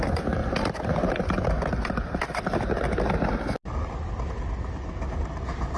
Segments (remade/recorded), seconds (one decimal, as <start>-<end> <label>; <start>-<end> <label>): 0.0-5.8 recorded

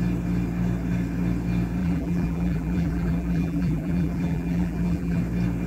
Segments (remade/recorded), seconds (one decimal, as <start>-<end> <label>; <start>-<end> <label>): 0.0-1.8 recorded; 1.8-5.2 remade; 5.2-5.7 recorded

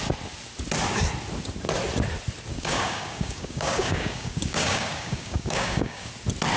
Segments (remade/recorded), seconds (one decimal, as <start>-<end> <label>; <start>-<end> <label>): 0.0-2.5 recorded; 2.5-6.1 remade; 6.1-6.6 recorded

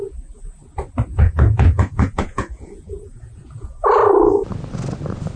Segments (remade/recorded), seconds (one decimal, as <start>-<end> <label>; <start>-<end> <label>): 0.0-1.1 recorded; 1.1-3.8 remade; 3.8-5.4 recorded

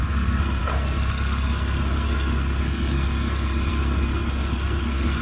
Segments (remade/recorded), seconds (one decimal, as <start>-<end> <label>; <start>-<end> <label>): 0.0-5.2 remade

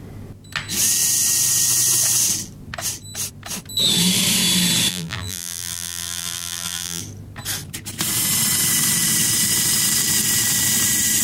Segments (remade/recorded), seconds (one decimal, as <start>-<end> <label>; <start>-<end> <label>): 0.0-4.9 recorded; 4.9-7.0 remade; 7.0-11.2 recorded

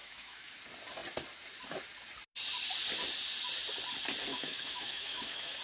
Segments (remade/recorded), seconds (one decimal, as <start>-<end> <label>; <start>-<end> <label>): 0.0-0.5 remade; 0.5-4.3 recorded; 4.3-5.6 remade